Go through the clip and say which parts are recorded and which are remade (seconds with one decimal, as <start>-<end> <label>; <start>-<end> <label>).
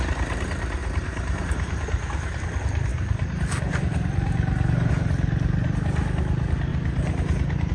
0.0-0.8 recorded; 0.8-2.4 remade; 2.4-6.7 recorded; 6.7-7.7 remade